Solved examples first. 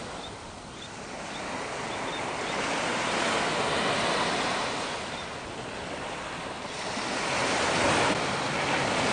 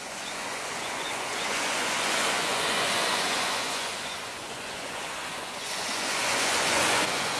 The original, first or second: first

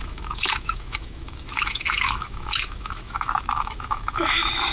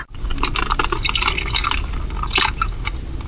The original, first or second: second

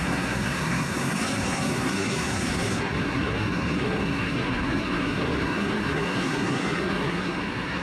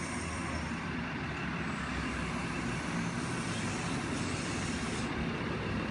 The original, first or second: second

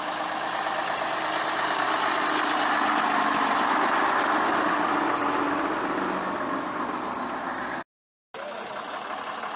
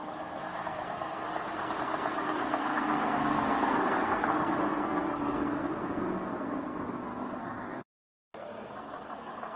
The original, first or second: first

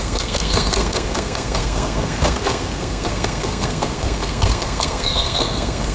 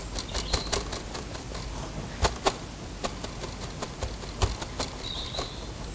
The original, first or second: second